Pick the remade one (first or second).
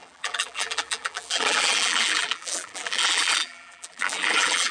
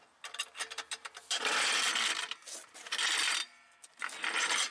first